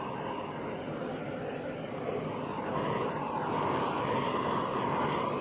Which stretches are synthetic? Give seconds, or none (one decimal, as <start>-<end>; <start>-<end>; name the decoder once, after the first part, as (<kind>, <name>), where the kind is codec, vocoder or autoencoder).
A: none